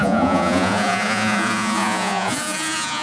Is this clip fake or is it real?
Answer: fake